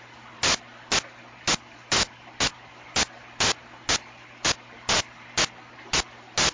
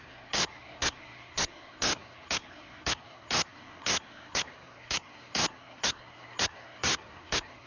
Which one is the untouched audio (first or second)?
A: first